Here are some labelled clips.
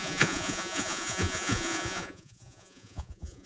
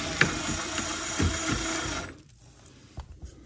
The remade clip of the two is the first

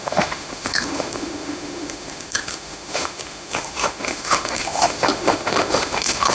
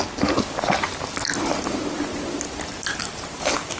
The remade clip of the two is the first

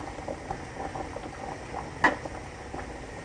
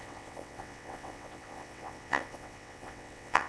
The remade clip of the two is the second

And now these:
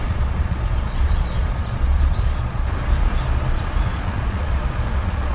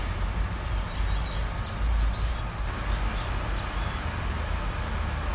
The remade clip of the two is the first